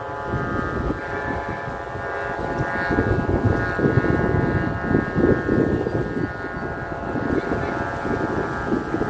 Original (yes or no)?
yes